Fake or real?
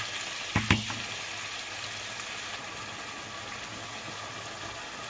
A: real